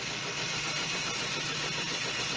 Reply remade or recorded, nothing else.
recorded